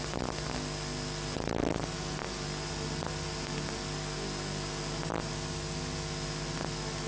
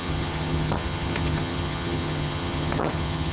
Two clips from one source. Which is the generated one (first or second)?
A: second